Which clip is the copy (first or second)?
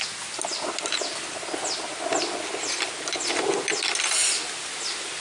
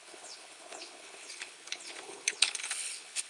second